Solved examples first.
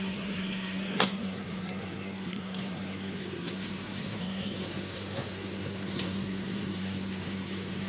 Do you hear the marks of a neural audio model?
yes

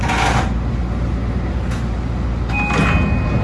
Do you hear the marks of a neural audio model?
no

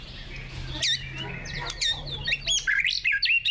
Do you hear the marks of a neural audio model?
no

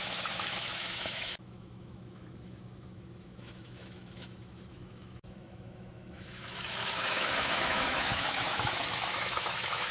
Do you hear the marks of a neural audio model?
yes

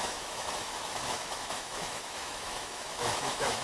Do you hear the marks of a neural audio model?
yes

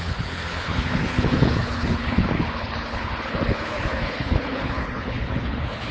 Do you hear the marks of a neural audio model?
yes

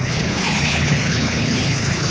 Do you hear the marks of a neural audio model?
yes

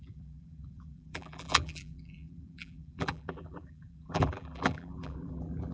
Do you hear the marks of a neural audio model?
yes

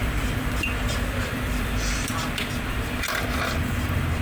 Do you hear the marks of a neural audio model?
yes